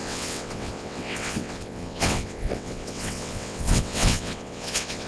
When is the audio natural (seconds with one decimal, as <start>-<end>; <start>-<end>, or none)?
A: none